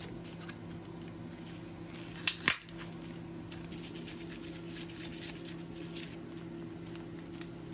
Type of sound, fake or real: real